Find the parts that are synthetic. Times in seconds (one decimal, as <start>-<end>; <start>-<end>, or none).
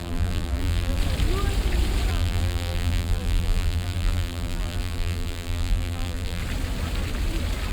0.0-1.0; 2.1-6.4